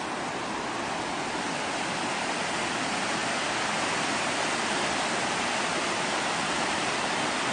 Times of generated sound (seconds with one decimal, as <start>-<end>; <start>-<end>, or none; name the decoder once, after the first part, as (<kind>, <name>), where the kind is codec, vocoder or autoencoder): none